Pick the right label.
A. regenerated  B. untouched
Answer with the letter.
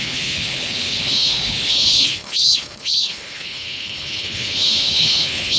A